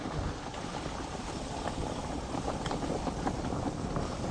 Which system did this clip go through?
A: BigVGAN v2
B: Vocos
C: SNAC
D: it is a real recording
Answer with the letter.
A